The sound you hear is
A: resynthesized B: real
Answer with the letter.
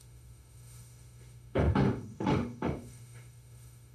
A